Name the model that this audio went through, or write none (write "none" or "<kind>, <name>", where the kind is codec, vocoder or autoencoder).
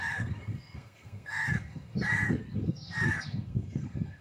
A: codec, SNAC